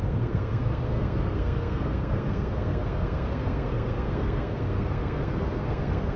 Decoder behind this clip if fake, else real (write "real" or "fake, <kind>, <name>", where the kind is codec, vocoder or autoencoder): fake, codec, SNAC